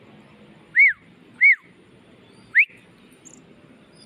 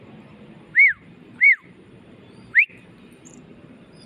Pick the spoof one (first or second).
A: second